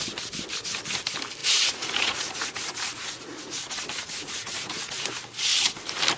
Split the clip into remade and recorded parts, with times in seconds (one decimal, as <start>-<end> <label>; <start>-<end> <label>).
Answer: 0.0-1.4 recorded; 1.4-5.1 remade; 5.1-6.2 recorded